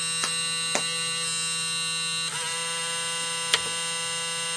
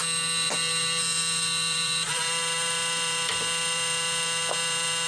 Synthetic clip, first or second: second